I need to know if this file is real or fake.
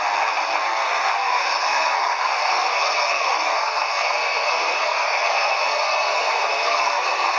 fake